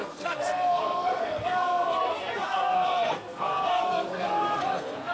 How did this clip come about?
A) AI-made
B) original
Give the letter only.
A